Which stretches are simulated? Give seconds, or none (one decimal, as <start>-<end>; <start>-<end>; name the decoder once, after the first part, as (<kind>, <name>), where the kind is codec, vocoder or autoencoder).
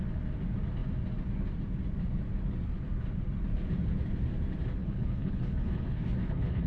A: 4.8-6.7 (codec, HILCodec)